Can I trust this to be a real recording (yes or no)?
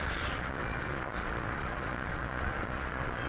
no